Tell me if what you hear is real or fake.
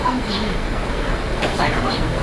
fake